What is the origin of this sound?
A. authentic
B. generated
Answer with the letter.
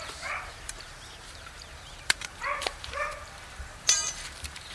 B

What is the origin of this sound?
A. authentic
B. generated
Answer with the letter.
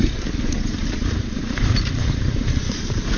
B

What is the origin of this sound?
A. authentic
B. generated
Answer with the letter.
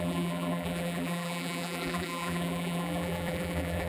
B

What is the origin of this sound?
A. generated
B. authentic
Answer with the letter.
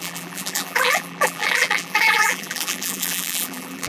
A